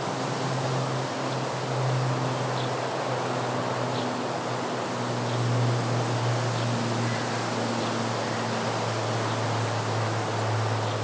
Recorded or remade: recorded